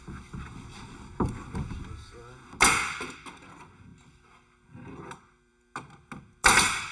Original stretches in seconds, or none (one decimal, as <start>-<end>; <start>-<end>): 0.0-6.9